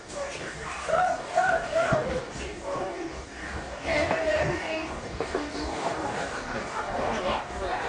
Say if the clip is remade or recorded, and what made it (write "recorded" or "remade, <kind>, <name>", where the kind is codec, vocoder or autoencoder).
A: remade, codec, DAC